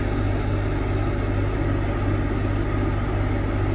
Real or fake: real